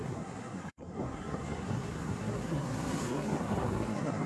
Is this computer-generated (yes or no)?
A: yes